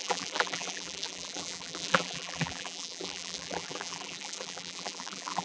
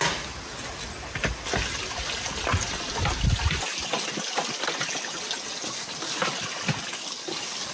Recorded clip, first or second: second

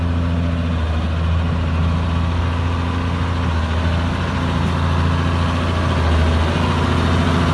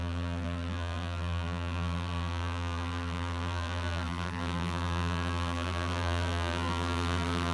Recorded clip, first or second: first